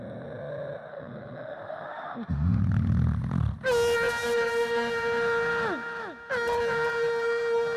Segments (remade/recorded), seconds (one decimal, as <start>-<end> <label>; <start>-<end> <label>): 0.0-0.9 recorded; 0.9-2.6 remade; 2.6-7.8 recorded